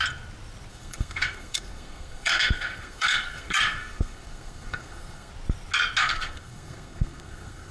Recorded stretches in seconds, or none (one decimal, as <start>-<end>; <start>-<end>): 0.0-0.7; 5.3-6.0